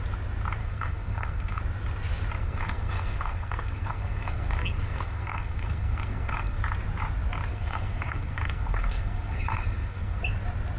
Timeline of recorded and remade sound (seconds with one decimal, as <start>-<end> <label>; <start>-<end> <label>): 0.0-0.6 recorded; 0.6-1.6 remade; 1.6-2.4 recorded; 2.4-6.6 remade; 6.6-7.5 recorded; 7.5-10.2 remade; 10.2-10.8 recorded